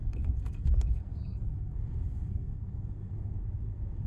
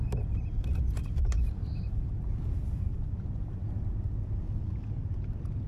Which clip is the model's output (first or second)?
first